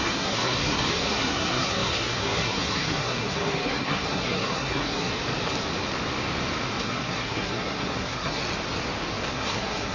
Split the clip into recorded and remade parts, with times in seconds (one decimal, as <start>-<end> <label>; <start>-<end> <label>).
0.0-5.1 remade; 5.1-6.8 recorded; 6.8-8.4 remade; 8.4-9.3 recorded; 9.3-9.9 remade